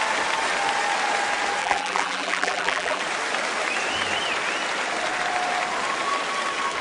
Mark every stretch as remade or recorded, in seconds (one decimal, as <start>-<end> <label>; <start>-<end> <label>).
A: 0.0-1.6 recorded; 1.6-3.0 remade; 3.0-6.8 recorded